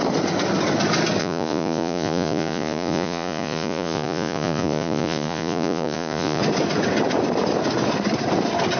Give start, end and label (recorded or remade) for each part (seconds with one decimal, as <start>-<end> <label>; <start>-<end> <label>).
0.0-1.2 recorded; 1.2-6.4 remade; 6.4-8.8 recorded